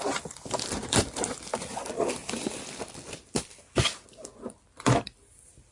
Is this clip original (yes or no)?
no